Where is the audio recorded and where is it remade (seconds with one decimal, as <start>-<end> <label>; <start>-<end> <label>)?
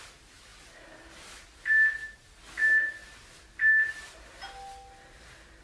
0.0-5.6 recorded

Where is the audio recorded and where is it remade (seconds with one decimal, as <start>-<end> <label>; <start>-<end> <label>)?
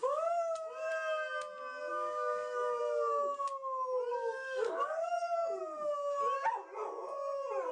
0.0-0.9 remade; 0.9-1.9 recorded; 1.9-2.8 remade; 2.8-4.1 recorded; 4.1-5.6 remade; 5.6-7.7 recorded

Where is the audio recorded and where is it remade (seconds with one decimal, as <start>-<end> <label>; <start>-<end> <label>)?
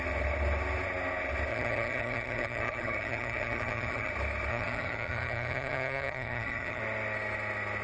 0.0-1.5 recorded; 1.5-4.1 remade; 4.1-4.5 recorded; 4.5-6.8 remade; 6.8-7.8 recorded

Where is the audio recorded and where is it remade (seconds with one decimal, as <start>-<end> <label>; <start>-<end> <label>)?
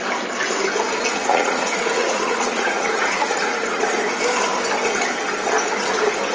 0.0-1.1 recorded; 1.1-4.0 remade; 4.0-6.3 recorded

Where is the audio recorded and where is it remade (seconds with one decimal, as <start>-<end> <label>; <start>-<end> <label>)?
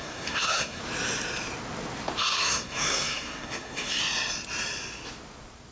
0.0-0.8 remade; 0.8-2.2 recorded; 2.2-4.0 remade; 4.0-5.7 recorded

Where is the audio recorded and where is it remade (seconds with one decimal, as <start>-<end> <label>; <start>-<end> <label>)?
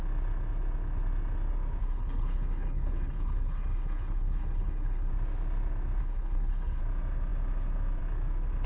0.0-1.8 recorded; 1.8-5.1 remade; 5.1-6.0 recorded; 6.0-6.8 remade; 6.8-8.7 recorded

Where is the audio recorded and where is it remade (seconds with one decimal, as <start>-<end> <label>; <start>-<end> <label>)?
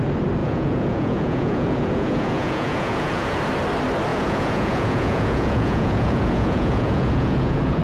0.0-0.4 recorded; 0.4-3.4 remade; 3.4-4.1 recorded; 4.1-7.8 remade